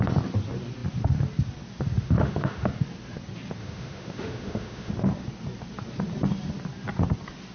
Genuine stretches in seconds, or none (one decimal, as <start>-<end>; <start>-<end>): 0.0-2.0; 2.7-3.6; 4.9-7.5